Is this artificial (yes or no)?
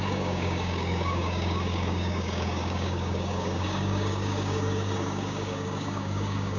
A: yes